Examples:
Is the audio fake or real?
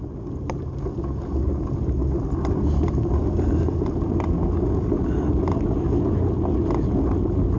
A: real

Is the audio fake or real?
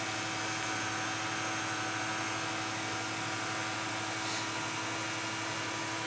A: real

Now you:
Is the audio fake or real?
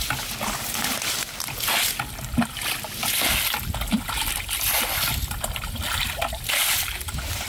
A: real